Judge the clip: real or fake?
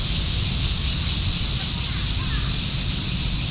real